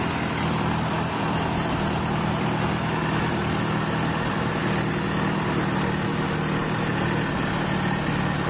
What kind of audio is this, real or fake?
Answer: real